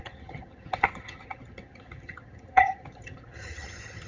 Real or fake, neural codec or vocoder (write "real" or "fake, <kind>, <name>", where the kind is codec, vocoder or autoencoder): fake, vocoder, HiFi-GAN